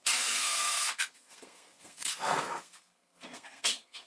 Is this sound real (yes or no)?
no